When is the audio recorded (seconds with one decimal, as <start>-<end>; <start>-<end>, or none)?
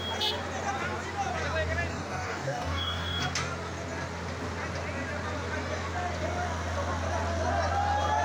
0.0-1.9; 3.2-8.2